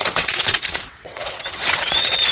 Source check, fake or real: fake